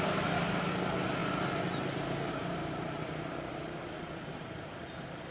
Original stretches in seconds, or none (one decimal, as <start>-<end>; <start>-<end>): 0.0-5.3